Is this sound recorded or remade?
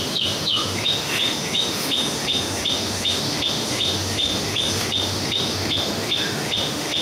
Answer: remade